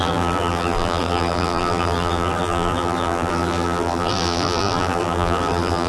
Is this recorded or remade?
remade